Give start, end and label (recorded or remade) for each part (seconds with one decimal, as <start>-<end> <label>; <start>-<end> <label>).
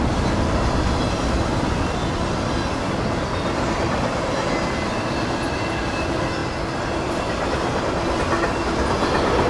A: 0.0-9.5 recorded